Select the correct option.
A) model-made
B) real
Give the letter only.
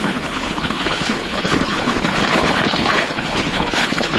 A